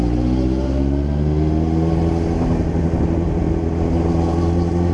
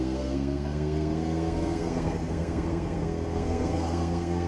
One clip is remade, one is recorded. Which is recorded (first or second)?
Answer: first